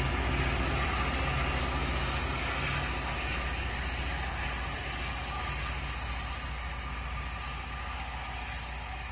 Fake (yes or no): no